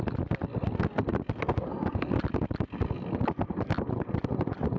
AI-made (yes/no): no